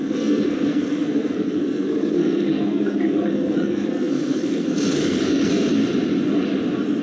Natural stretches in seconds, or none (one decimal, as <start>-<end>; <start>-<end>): 5.8-7.0